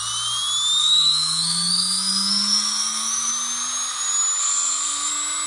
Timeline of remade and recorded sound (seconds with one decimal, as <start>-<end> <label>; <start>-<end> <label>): 0.0-0.8 recorded; 0.8-3.3 remade; 3.3-4.4 recorded; 4.4-5.1 remade; 5.1-5.5 recorded